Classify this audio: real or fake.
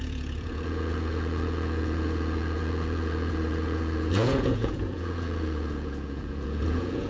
fake